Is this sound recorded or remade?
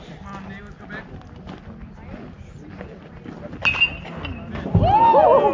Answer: recorded